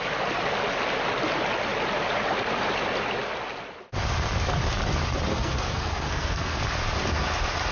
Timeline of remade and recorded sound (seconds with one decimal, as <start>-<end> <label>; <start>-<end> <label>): 0.0-5.3 recorded; 5.3-6.6 remade; 6.6-7.7 recorded